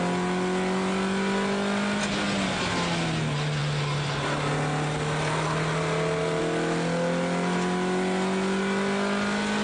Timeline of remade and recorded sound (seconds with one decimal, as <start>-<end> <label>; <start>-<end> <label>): 0.0-9.6 recorded